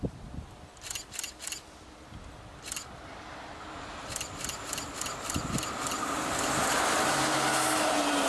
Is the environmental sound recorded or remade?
recorded